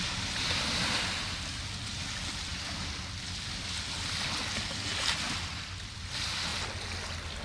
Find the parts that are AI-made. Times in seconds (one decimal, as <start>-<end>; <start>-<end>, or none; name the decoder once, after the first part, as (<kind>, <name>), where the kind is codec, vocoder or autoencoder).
none

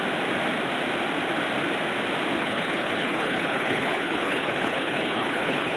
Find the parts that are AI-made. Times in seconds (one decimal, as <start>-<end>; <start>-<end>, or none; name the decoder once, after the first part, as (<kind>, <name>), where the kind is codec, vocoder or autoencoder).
2.4-5.8 (codec, HILCodec)